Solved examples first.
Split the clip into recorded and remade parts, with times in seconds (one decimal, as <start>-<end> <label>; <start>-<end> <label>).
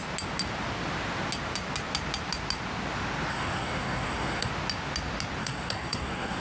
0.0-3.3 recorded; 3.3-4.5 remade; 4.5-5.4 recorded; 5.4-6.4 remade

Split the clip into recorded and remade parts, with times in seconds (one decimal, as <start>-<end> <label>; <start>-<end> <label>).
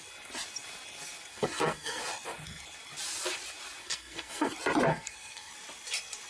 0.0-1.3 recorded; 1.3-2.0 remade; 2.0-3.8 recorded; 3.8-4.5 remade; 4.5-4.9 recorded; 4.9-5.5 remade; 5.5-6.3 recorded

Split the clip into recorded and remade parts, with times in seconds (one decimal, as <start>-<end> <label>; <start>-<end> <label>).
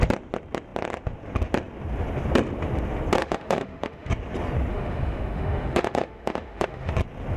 0.0-3.2 recorded; 3.2-4.1 remade; 4.1-4.7 recorded; 4.7-6.9 remade; 6.9-7.4 recorded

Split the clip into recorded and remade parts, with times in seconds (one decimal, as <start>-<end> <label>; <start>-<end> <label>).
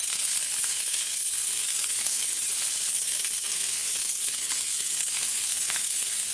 0.0-2.3 remade; 2.3-2.9 recorded; 2.9-6.3 remade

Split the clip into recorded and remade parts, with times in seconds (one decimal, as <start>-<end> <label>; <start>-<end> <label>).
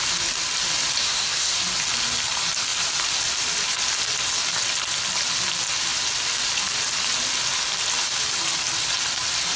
0.0-1.0 recorded; 1.0-1.6 remade; 1.6-9.6 recorded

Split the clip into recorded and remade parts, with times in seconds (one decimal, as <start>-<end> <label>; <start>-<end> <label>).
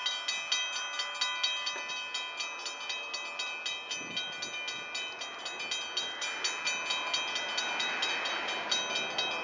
0.0-9.4 recorded